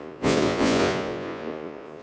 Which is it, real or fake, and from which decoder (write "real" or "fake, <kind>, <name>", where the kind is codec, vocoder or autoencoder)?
fake, vocoder, Vocos